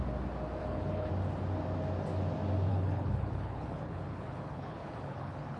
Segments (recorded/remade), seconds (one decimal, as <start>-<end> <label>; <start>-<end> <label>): 0.0-0.6 recorded; 0.6-1.1 remade; 1.1-2.7 recorded; 2.7-5.6 remade

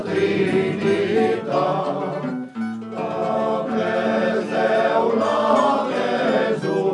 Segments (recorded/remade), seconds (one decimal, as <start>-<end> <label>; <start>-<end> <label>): 0.0-4.2 recorded; 4.2-6.2 remade; 6.2-6.9 recorded

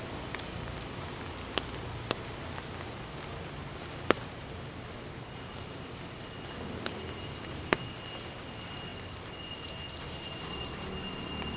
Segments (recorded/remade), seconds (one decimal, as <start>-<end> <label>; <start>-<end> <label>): 0.0-11.6 recorded

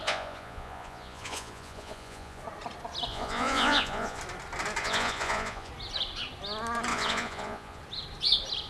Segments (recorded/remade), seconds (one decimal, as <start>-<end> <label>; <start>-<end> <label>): 0.0-2.4 remade; 2.4-3.1 recorded; 3.1-4.2 remade; 4.2-4.8 recorded; 4.8-5.7 remade; 5.7-6.9 recorded; 6.9-7.8 remade; 7.8-8.7 recorded

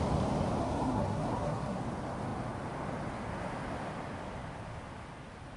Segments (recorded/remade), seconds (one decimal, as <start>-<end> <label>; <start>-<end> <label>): 0.0-0.6 recorded; 0.6-1.8 remade; 1.8-5.6 recorded

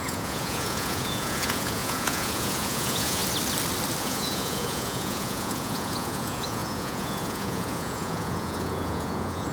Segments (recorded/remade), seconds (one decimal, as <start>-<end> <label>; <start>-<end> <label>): 0.0-3.2 remade; 3.2-4.0 recorded; 4.0-9.5 remade

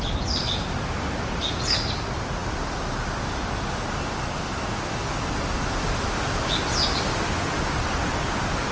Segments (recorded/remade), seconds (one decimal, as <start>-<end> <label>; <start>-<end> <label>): 0.0-8.7 recorded